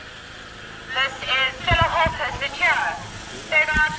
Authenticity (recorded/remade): recorded